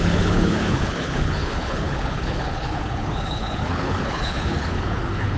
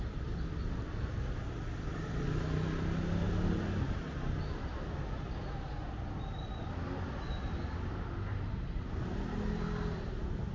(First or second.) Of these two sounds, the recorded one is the second